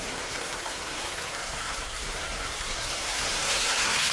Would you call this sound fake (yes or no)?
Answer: yes